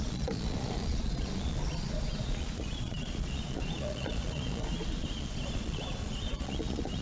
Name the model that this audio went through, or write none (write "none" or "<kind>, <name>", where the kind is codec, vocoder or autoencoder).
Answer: vocoder, Vocos